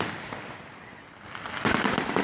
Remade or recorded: recorded